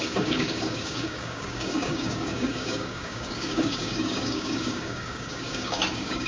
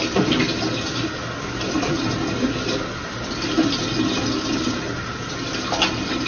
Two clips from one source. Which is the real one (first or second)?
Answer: second